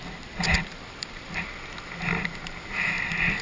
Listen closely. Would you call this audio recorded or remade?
recorded